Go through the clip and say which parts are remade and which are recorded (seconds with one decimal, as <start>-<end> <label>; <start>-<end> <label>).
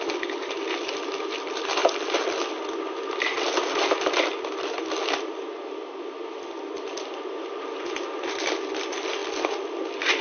0.0-10.2 recorded